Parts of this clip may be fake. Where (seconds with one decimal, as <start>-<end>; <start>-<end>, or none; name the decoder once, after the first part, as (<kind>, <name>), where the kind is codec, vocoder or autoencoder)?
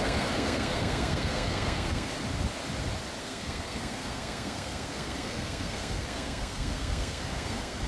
0.0-2.1 (codec, SNAC); 3.2-7.9